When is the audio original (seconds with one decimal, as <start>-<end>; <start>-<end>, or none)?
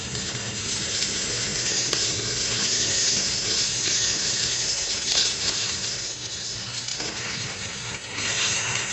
none